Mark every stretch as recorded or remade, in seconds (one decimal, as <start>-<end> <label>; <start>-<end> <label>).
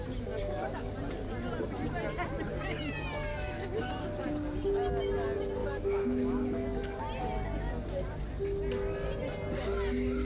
0.0-0.4 recorded; 0.4-0.9 remade; 0.9-3.3 recorded; 3.3-3.9 remade; 3.9-5.6 recorded; 5.6-7.0 remade; 7.0-10.2 recorded